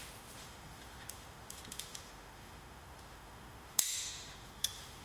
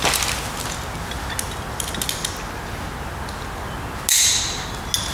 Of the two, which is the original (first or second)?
second